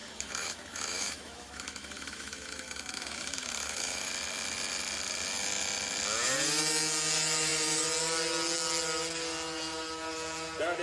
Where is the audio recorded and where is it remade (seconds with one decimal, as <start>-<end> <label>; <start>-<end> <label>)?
0.0-4.1 remade; 4.1-10.8 recorded